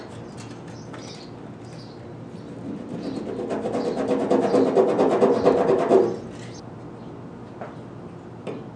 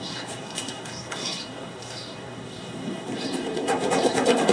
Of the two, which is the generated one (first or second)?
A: second